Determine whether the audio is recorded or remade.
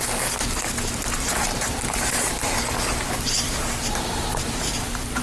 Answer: recorded